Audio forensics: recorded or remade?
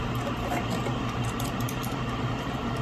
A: recorded